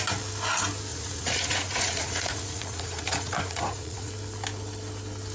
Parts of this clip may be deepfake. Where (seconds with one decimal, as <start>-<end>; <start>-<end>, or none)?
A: 0.9-4.1